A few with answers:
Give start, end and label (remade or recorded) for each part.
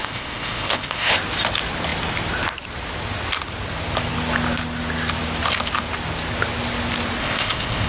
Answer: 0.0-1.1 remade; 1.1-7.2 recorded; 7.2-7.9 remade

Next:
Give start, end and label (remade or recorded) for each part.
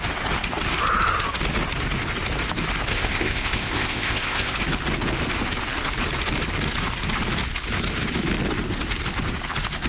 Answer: 0.0-2.9 recorded; 2.9-4.5 remade; 4.5-9.9 recorded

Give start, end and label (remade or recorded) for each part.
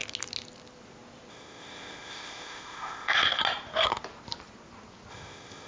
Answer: 0.0-1.3 recorded; 1.3-3.4 remade; 3.4-5.1 recorded; 5.1-5.7 remade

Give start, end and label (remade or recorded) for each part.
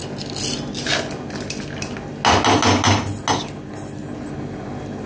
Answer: 0.0-5.1 recorded